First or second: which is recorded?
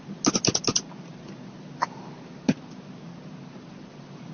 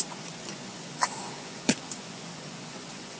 first